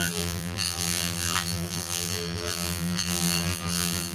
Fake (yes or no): yes